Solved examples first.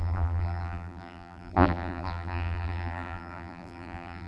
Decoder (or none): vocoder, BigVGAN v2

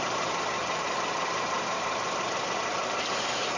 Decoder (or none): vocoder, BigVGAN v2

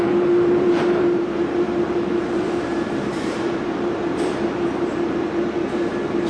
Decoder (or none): vocoder, BigVGAN v2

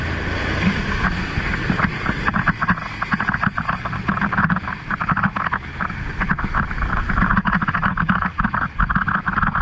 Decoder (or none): none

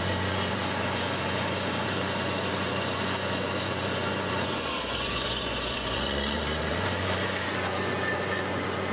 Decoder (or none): vocoder, Vocos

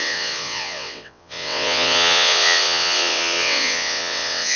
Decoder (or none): vocoder, WaveNeXt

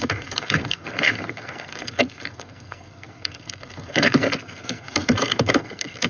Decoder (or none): codec, SNAC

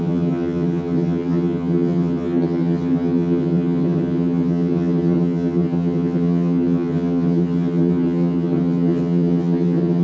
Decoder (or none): vocoder, HiFi-GAN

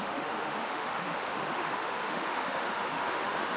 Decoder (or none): autoencoder, DAC-VAE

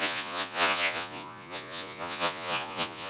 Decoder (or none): vocoder, Vocos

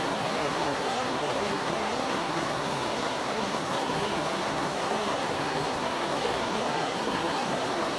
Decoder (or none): codec, SNAC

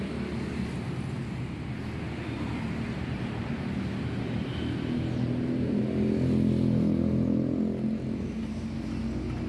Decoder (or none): none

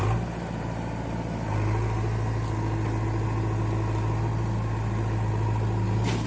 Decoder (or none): none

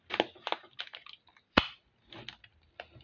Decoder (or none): none